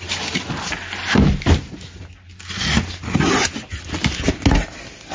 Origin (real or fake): real